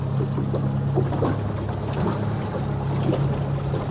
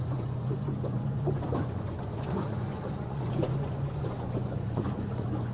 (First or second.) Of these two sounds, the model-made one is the second